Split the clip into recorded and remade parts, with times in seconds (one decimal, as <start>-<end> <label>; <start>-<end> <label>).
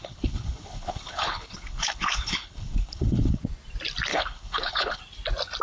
0.0-3.4 remade; 3.4-4.1 recorded; 4.1-5.0 remade; 5.0-5.6 recorded